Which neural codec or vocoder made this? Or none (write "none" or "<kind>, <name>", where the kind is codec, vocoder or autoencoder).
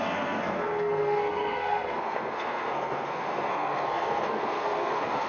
codec, SNAC